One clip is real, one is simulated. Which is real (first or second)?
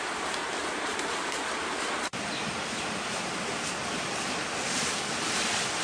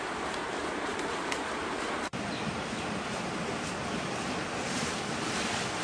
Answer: second